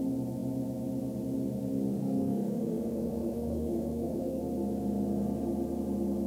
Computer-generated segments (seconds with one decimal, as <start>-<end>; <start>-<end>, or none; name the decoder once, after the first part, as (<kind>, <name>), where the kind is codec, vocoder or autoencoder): 2.0-4.4 (autoencoder, DAC-VAE)